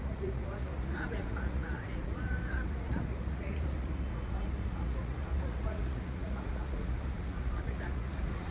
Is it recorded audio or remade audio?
remade